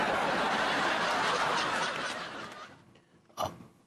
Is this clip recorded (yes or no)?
yes